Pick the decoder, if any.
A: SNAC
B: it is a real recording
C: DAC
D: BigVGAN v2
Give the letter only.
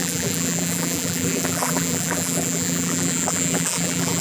D